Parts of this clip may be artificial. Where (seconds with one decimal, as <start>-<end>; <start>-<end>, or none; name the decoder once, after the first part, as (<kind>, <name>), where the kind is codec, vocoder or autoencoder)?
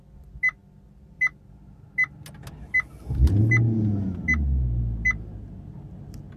none